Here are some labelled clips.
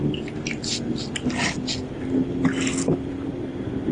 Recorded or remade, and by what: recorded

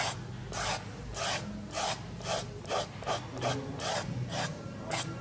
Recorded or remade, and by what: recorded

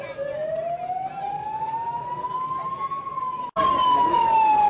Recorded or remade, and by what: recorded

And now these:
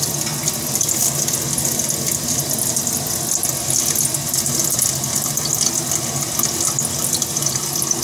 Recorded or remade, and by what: recorded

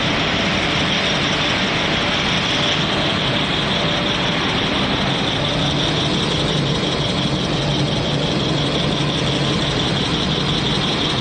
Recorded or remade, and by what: recorded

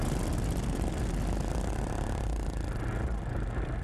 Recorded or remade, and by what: recorded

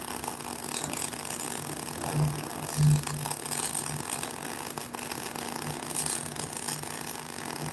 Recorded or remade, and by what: recorded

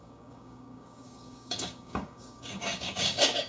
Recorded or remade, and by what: remade, codec, DAC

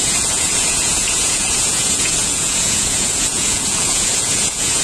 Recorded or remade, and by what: remade, vocoder, Vocos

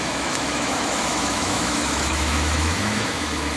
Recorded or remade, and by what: remade, autoencoder, DAC-VAE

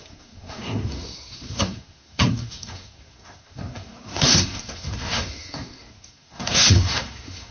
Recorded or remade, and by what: remade, codec, SNAC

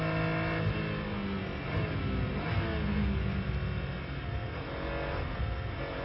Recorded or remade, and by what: recorded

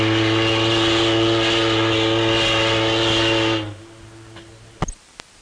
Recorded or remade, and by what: recorded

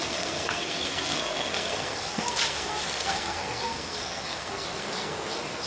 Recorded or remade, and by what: remade, codec, SNAC